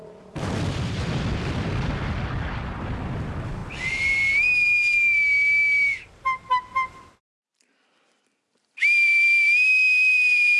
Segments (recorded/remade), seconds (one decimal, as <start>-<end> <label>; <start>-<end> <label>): 0.0-3.6 remade; 3.6-7.7 recorded; 7.7-10.6 remade